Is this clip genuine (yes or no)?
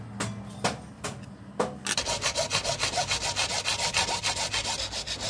yes